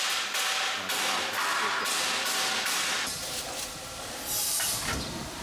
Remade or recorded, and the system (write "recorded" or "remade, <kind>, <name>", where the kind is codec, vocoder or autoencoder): recorded